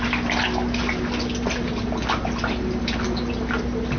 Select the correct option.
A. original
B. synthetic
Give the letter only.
A